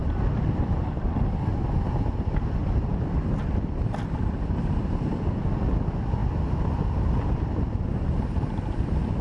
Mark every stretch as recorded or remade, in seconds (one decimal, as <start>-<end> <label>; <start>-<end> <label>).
0.0-9.2 recorded